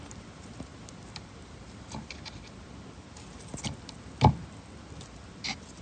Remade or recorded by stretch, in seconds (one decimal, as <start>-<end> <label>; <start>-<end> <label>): 0.0-5.8 recorded